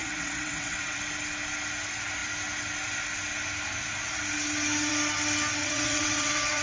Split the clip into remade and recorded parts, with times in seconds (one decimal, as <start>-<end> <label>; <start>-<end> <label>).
0.0-1.0 remade; 1.0-5.6 recorded; 5.6-6.6 remade

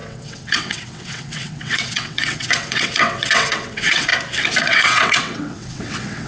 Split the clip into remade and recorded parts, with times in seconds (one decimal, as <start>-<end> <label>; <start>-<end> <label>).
0.0-4.1 remade; 4.1-4.6 recorded; 4.6-6.3 remade

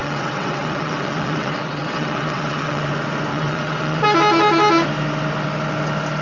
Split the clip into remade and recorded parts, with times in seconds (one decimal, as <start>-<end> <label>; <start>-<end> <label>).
0.0-2.9 remade; 2.9-3.3 recorded; 3.3-4.0 remade; 4.0-6.2 recorded

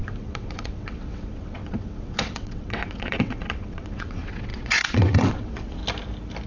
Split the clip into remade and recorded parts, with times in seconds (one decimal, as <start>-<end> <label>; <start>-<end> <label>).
0.0-5.8 remade; 5.8-6.5 recorded

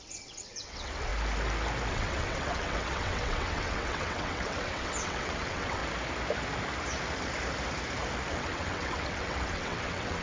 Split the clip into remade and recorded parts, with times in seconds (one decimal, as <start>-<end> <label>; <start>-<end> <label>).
0.0-1.1 remade; 1.1-1.9 recorded; 1.9-5.8 remade; 5.8-8.3 recorded; 8.3-10.2 remade